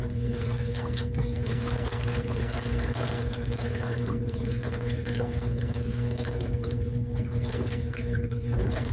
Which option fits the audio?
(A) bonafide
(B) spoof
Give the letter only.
B